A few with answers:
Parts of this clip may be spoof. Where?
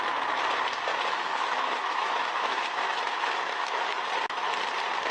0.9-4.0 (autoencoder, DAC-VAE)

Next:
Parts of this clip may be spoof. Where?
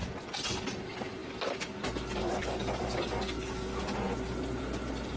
2.2-3.8 (codec, DAC)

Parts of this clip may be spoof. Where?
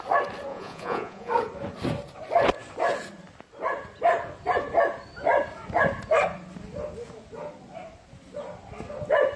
0.5-1.3 (vocoder, Vocos)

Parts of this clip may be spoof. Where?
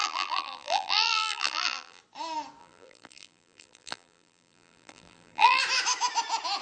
0.0-2.0 (vocoder, BigVGAN v2); 2.6-5.6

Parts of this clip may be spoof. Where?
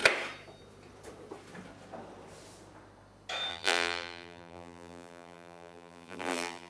3.5-6.7 (vocoder, BigVGAN v2)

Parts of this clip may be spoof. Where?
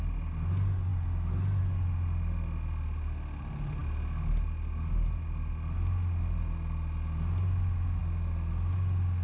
none